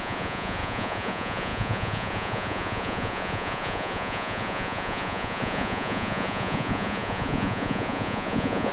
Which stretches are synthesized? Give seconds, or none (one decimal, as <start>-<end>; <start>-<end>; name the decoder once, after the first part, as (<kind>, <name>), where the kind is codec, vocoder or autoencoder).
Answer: 0.0-8.7 (vocoder, Vocos)